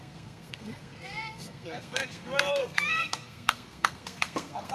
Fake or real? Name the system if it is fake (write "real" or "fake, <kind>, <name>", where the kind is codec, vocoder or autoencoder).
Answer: fake, codec, SNAC